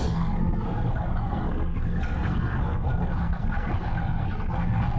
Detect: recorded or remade remade